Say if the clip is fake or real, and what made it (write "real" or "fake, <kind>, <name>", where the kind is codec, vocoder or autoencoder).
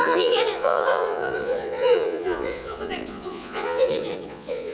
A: fake, vocoder, Vocos